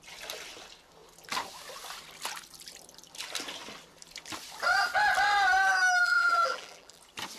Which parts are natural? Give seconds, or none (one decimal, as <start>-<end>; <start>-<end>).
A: 0.0-6.0; 7.0-7.4